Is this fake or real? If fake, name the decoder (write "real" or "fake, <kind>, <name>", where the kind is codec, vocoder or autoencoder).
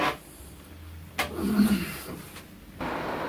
real